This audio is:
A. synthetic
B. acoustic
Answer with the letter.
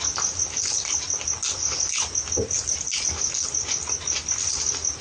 B